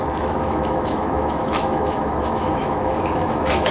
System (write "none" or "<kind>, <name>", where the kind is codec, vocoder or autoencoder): autoencoder, DAC-VAE